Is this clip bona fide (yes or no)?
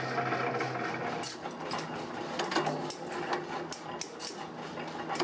yes